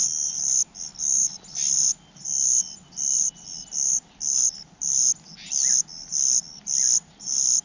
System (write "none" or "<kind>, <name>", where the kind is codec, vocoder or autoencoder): none